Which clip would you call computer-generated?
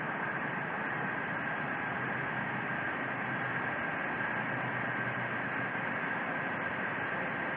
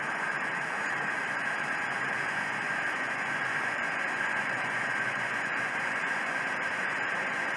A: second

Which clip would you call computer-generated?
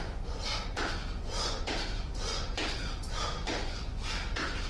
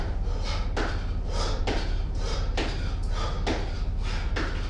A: first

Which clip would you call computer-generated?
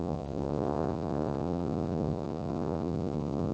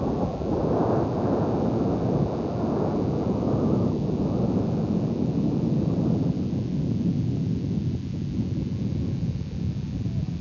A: first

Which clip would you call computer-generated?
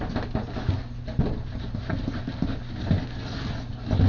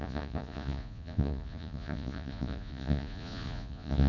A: second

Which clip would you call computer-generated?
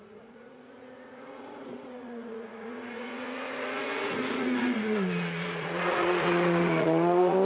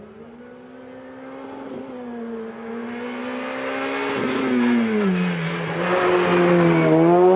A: first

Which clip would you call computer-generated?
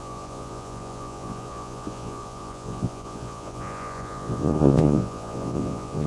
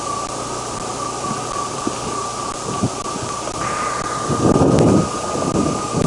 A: first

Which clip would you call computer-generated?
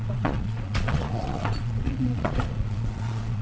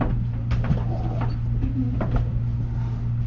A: first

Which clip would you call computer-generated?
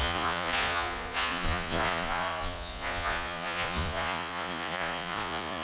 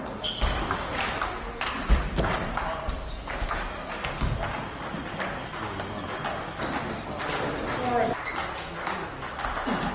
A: first